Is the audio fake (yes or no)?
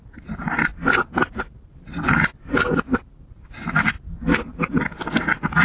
no